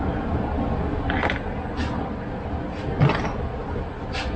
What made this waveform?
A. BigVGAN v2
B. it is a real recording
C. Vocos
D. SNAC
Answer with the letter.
B